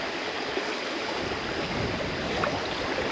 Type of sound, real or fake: real